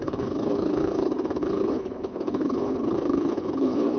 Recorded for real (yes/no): no